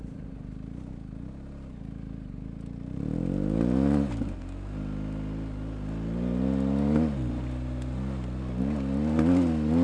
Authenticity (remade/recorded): recorded